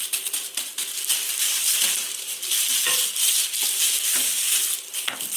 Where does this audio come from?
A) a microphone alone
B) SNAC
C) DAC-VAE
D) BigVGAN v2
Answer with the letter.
A